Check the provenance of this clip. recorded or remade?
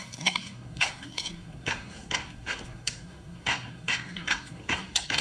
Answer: remade